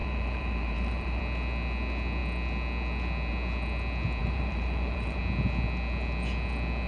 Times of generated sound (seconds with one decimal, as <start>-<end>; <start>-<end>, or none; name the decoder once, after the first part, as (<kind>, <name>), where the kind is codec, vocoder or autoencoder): 0.0-1.2 (vocoder, BigVGAN v2); 4.2-5.2